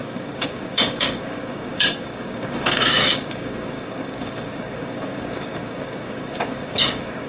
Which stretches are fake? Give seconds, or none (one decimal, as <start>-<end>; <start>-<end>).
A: 0.0-7.3